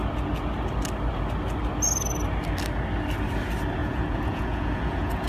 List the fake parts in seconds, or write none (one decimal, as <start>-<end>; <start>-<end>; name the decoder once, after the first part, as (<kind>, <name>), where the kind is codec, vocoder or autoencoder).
3.8-5.3 (vocoder, Vocos)